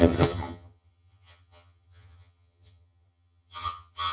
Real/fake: fake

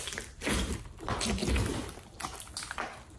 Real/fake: real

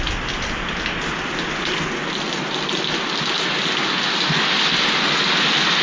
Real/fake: real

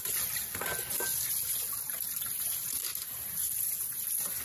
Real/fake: fake